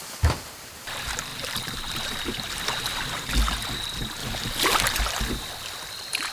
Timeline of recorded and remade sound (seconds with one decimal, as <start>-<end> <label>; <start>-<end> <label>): 0.0-1.3 recorded; 1.3-3.3 remade; 3.3-4.2 recorded; 4.2-5.0 remade; 5.0-6.3 recorded